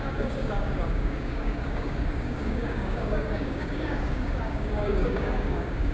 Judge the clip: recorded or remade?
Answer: remade